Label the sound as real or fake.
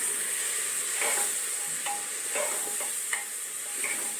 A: real